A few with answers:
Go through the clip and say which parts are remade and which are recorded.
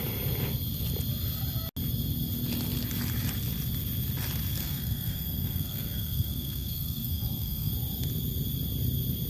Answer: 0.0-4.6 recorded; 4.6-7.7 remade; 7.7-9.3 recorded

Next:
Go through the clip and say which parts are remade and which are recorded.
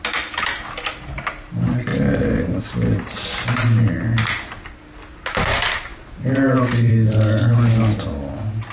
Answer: 0.0-1.9 recorded; 1.9-2.6 remade; 2.6-5.9 recorded; 5.9-6.9 remade; 6.9-8.7 recorded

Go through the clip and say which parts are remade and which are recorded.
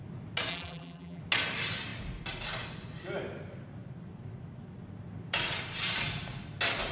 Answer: 0.0-0.5 recorded; 0.5-1.2 remade; 1.2-6.9 recorded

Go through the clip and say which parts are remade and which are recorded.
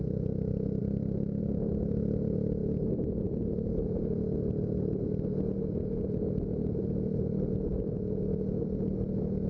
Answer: 0.0-0.8 recorded; 0.8-1.4 remade; 1.4-9.5 recorded